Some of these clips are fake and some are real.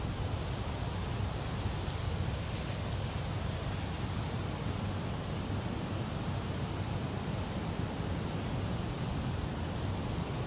real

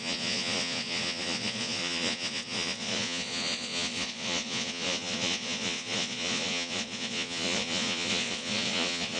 fake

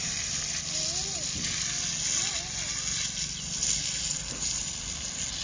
real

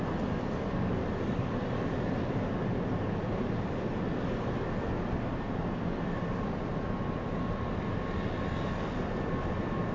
real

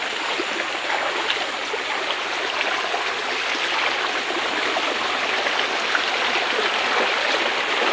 real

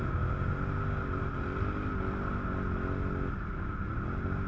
real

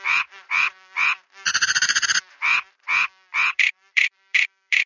fake